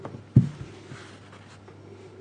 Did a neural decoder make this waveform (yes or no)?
no